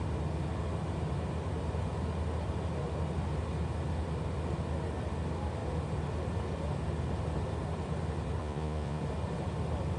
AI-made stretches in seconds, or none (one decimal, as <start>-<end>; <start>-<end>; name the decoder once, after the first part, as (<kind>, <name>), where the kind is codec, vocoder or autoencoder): 8.4-9.0 (vocoder, Vocos)